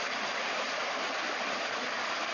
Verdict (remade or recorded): remade